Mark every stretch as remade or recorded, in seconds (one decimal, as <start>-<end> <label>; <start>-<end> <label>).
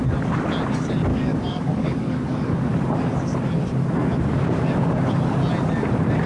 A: 0.0-1.1 recorded; 1.1-2.7 remade; 2.7-6.3 recorded